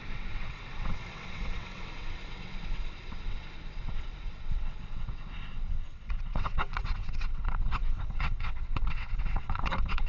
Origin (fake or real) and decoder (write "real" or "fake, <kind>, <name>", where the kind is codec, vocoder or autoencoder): fake, vocoder, WaveNeXt